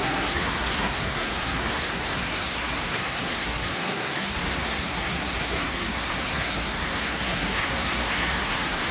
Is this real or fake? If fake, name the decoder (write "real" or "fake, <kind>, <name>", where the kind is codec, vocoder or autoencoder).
fake, codec, SNAC